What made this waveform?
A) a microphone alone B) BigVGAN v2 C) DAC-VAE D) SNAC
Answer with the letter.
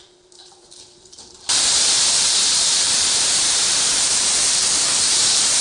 B